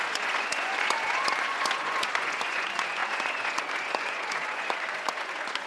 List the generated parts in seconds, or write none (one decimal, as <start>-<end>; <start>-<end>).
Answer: 0.0-5.7